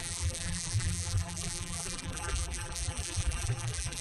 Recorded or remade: remade